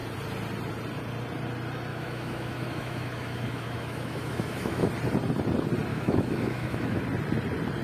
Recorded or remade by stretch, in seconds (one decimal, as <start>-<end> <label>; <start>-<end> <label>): 0.0-1.9 recorded; 1.9-4.9 remade; 4.9-5.9 recorded; 5.9-7.0 remade; 7.0-7.8 recorded